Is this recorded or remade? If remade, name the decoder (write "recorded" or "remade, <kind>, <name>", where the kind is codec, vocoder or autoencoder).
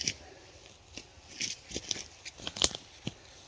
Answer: recorded